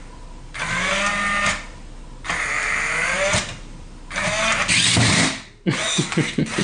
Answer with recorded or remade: recorded